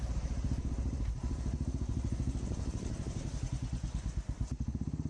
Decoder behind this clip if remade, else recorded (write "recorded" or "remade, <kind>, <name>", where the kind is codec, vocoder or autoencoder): remade, vocoder, BigVGAN v2